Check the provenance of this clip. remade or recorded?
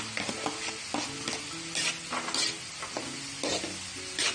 recorded